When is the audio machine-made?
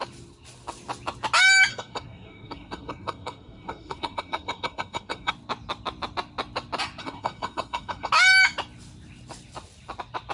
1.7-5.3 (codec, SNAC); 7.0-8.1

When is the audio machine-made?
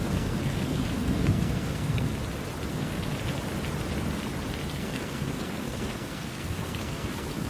0.0-2.1 (codec, SNAC); 2.7-3.1; 4.7-7.5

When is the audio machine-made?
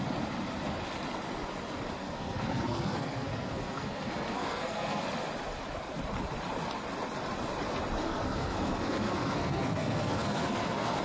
2.0-5.0 (codec, SNAC); 8.0-11.0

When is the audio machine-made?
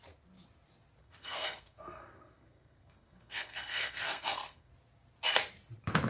1.0-4.7 (codec, SNAC)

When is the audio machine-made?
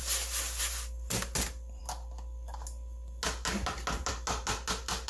none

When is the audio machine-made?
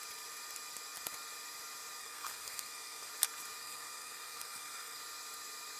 2.0-3.1 (codec, SNAC); 3.6-5.0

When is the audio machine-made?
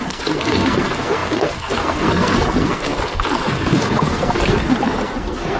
0.0-5.6 (codec, SNAC)